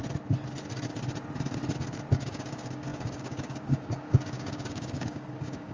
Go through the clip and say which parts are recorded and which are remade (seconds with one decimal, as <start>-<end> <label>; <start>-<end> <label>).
0.0-2.1 recorded; 2.1-5.7 remade